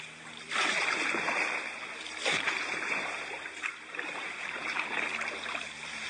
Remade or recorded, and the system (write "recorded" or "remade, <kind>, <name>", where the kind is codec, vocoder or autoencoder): remade, vocoder, BigVGAN v2